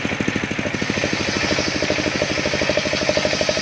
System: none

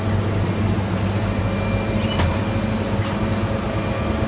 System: none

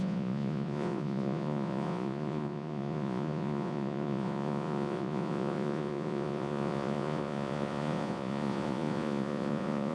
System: vocoder, Vocos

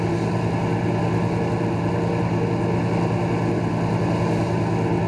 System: none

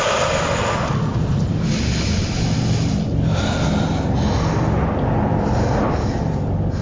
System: none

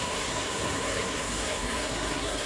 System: codec, SNAC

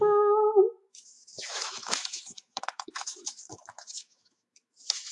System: autoencoder, DAC-VAE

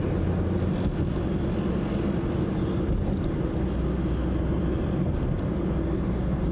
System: none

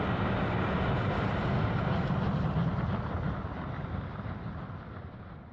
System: none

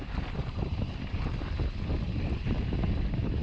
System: none